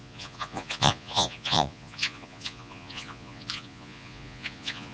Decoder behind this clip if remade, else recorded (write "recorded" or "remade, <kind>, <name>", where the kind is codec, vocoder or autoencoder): remade, vocoder, Vocos